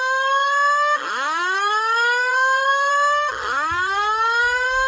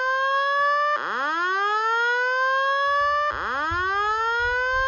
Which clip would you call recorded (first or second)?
second